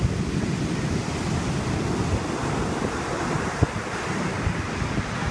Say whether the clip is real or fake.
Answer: real